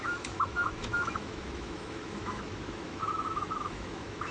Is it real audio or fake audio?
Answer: fake